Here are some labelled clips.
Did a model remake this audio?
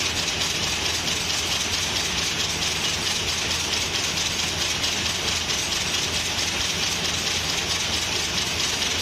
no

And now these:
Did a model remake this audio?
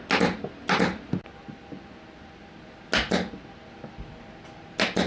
no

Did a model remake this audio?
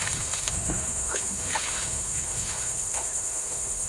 yes